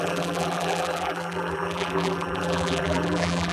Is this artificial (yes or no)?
yes